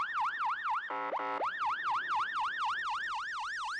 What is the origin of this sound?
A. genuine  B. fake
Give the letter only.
A